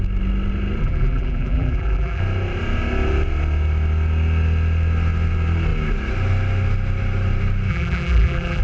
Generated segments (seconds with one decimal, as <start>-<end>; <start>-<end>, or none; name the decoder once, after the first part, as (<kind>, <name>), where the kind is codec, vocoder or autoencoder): 0.8-2.2 (vocoder, BigVGAN v2); 7.7-8.6